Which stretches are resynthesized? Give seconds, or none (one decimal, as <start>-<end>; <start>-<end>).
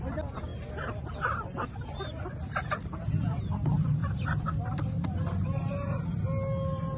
4.0-5.1